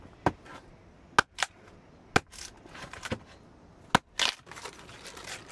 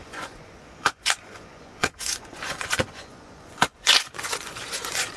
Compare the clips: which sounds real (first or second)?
first